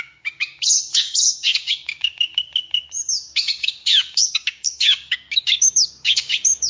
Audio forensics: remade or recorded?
remade